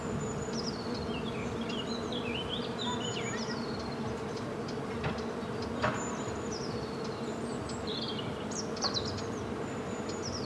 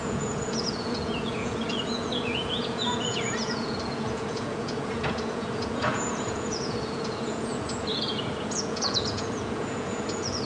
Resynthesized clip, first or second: second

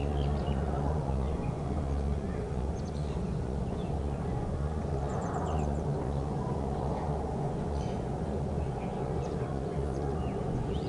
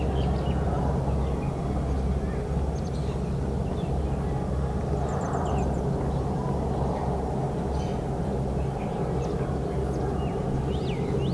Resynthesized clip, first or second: first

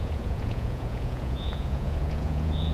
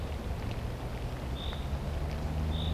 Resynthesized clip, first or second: first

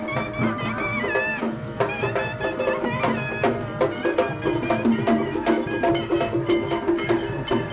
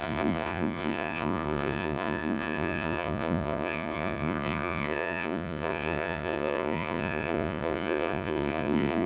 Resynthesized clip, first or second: second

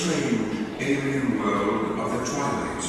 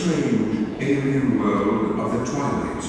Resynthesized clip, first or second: second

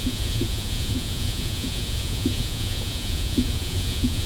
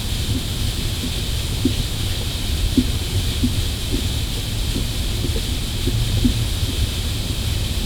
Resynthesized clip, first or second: first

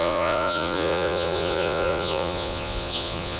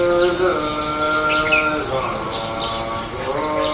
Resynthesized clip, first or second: first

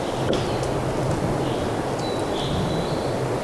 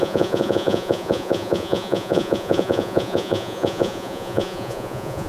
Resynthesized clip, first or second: second